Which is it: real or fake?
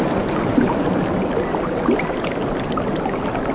real